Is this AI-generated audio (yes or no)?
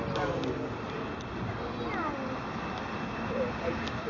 no